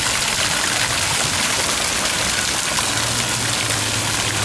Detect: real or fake real